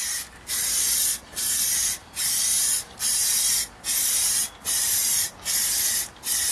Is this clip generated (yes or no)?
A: no